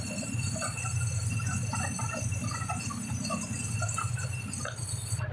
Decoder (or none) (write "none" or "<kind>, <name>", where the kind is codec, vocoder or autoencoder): none